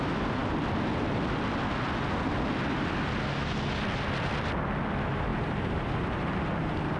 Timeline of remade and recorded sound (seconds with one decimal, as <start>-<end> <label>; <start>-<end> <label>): 0.0-5.3 recorded; 5.3-7.0 remade